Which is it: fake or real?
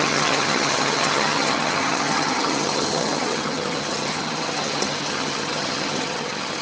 fake